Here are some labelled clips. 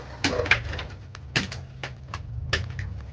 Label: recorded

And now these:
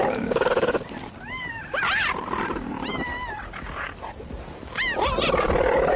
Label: recorded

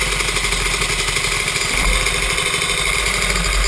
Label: recorded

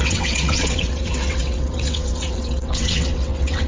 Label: remade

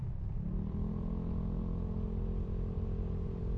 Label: recorded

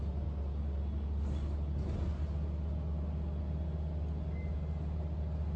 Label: recorded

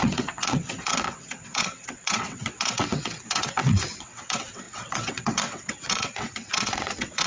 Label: remade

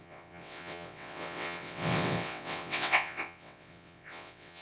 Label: remade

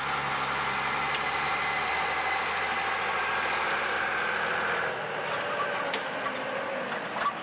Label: recorded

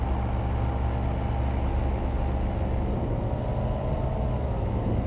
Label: recorded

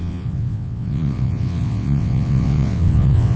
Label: remade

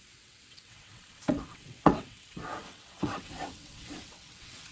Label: remade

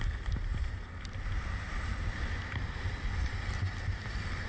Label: recorded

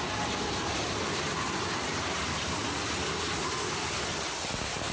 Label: recorded